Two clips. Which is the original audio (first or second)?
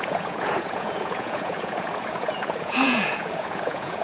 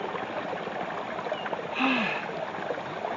second